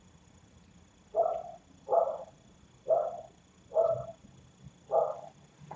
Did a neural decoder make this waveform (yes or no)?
yes